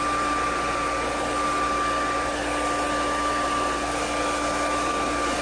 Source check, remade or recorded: recorded